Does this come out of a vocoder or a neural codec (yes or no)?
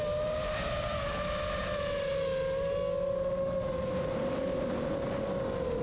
no